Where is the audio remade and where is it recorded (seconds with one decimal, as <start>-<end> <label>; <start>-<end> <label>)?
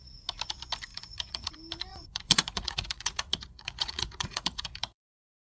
0.0-0.9 recorded; 0.9-1.5 remade; 1.5-1.9 recorded; 1.9-5.5 remade